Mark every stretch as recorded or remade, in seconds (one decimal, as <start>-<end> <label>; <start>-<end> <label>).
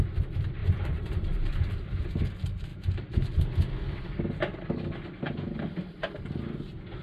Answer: 0.0-0.6 recorded; 0.6-2.1 remade; 2.1-2.7 recorded; 2.7-3.7 remade; 3.7-7.0 recorded